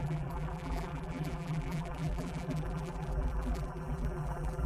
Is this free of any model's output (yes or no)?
no